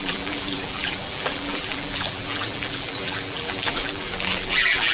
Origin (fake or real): fake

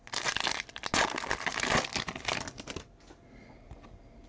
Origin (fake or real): real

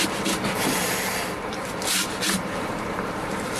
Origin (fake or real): fake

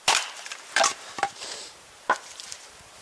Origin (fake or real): fake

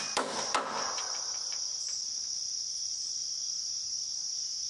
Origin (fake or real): fake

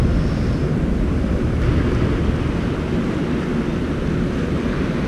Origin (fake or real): real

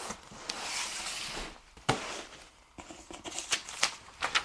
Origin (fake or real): real